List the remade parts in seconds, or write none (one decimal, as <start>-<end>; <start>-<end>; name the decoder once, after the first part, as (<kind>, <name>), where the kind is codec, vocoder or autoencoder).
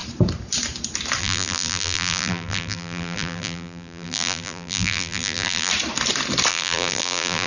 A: 1.2-5.7 (vocoder, BigVGAN v2); 6.5-7.5